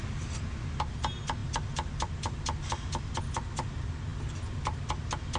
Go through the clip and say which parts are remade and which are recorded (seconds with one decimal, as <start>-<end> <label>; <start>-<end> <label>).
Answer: 0.0-5.4 recorded